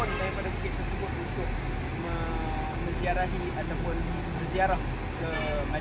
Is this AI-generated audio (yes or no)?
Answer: no